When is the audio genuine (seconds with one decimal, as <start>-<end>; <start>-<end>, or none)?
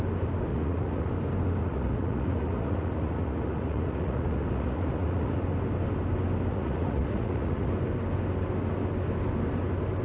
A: 0.0-0.5; 1.1-1.6; 5.4-6.5; 7.7-10.0